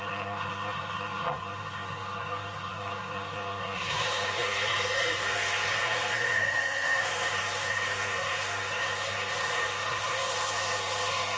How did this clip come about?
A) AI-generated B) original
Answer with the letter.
A